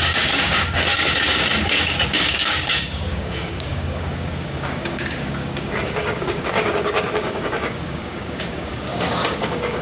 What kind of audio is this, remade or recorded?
remade